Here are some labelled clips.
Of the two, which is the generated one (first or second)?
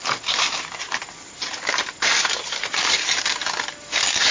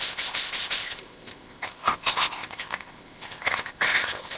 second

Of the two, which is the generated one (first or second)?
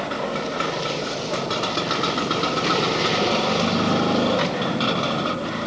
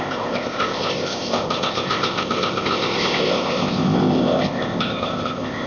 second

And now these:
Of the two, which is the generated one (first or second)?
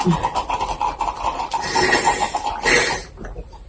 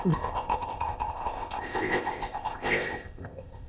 second